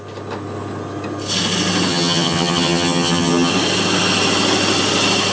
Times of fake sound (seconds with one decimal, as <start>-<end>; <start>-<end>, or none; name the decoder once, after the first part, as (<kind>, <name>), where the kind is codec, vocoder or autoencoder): 1.9-3.5 (vocoder, HiFi-GAN)